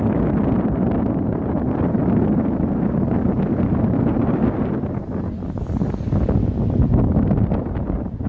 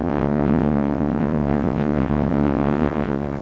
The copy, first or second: second